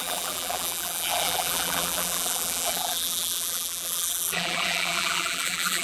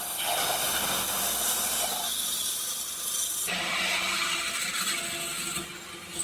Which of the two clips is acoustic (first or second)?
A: second